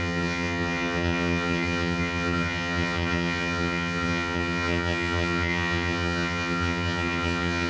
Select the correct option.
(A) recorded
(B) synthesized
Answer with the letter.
B